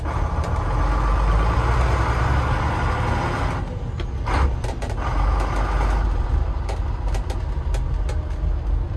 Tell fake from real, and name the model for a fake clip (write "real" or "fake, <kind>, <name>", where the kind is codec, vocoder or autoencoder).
real